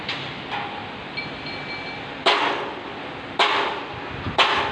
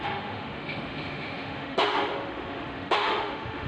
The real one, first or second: first